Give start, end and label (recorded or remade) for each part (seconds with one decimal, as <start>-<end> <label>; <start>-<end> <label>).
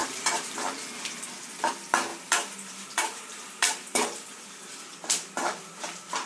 0.0-0.6 remade; 0.6-2.1 recorded; 2.1-6.3 remade